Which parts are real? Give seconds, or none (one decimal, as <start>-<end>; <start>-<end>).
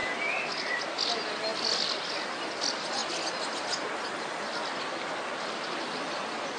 0.0-6.6